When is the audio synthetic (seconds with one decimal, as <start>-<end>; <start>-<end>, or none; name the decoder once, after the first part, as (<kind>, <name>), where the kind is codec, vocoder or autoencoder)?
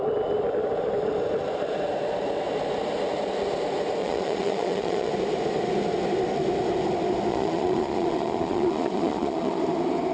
4.0-5.1 (vocoder, Vocos); 7.3-9.6